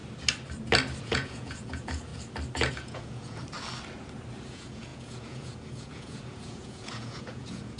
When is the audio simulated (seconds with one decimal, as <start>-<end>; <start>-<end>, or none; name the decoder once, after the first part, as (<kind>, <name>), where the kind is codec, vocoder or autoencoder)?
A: 1.0-2.1 (vocoder, Vocos); 2.7-3.4; 4.5-7.8